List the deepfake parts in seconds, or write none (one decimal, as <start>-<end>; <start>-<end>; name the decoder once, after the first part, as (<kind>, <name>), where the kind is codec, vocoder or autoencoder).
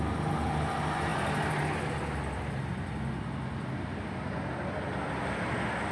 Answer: none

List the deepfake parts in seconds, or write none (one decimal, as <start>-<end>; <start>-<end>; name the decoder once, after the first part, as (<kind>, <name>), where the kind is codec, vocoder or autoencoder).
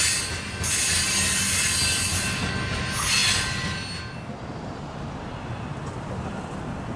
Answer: none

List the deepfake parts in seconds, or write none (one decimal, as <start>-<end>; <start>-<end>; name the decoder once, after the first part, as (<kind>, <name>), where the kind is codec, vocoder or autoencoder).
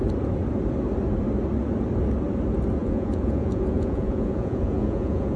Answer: 2.8-5.4 (vocoder, Vocos)